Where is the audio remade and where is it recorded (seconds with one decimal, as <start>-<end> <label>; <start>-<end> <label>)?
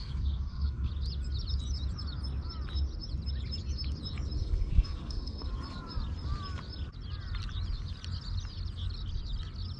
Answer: 0.0-0.9 remade; 0.9-4.4 recorded; 4.4-5.5 remade; 5.5-9.8 recorded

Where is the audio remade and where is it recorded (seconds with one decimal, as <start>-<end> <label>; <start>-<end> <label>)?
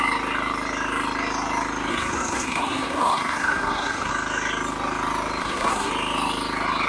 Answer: 0.0-1.9 recorded; 1.9-4.1 remade; 4.1-5.4 recorded; 5.4-5.9 remade; 5.9-6.9 recorded